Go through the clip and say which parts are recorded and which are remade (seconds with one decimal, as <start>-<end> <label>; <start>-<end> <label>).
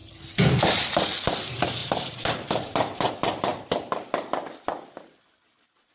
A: 0.0-1.8 recorded; 1.8-3.1 remade; 3.1-5.9 recorded